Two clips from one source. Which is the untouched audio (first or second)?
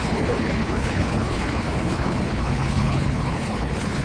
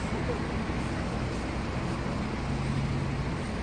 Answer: second